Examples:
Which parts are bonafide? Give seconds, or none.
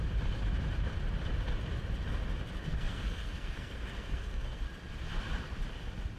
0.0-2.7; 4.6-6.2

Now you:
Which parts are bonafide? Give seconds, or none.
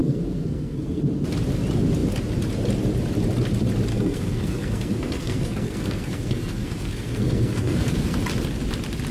1.0-3.9; 8.2-9.1